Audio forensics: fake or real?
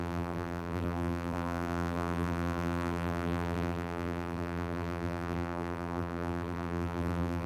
fake